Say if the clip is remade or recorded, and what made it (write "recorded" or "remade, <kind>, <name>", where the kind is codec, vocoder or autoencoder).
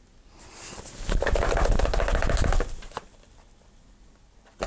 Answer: recorded